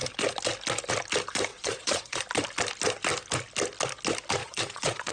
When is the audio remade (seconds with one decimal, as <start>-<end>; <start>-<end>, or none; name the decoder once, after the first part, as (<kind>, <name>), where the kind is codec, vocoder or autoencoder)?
1.5-2.2 (vocoder, Vocos); 4.4-5.1